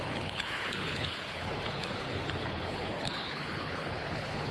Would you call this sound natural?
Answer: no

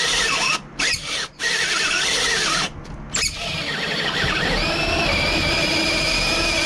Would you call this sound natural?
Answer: yes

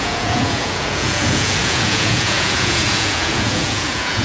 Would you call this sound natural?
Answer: no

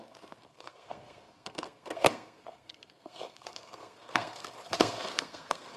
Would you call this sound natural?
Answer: no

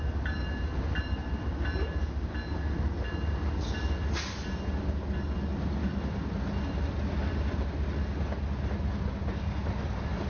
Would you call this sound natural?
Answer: yes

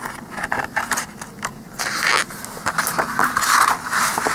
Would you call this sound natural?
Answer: yes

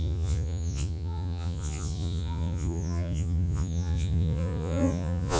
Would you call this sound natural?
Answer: no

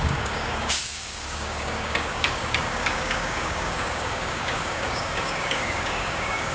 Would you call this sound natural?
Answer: no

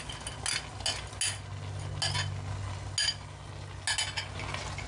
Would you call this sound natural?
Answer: yes